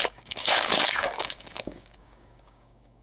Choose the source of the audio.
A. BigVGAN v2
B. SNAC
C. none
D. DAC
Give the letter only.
D